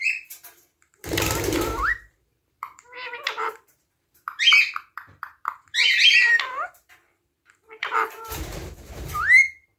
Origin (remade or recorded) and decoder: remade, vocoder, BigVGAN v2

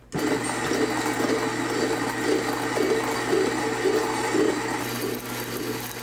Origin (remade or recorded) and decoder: recorded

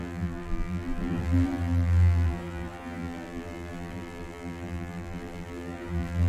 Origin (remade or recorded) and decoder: remade, vocoder, BigVGAN v2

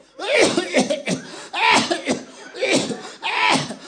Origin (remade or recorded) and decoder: remade, vocoder, BigVGAN v2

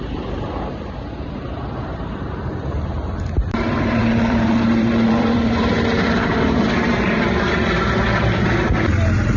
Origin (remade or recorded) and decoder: remade, vocoder, BigVGAN v2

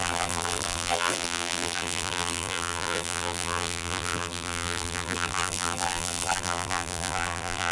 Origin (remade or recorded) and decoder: remade, vocoder, BigVGAN v2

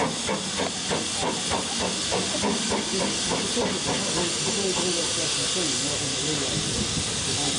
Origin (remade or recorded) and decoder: recorded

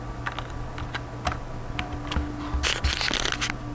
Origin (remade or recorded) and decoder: recorded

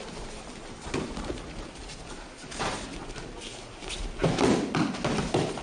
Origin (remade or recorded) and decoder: recorded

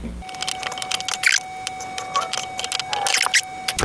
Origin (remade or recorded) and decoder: recorded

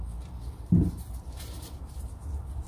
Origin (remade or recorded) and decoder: recorded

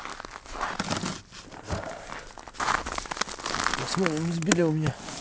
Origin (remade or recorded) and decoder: recorded